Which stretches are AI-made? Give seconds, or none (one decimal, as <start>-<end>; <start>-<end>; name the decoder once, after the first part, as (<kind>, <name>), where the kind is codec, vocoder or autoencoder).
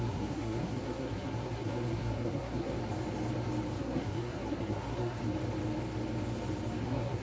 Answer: 0.0-2.8 (codec, SNAC); 3.8-5.2; 6.8-7.2